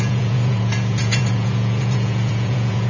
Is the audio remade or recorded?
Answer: remade